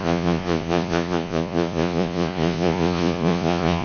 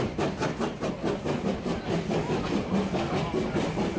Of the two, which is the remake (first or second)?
first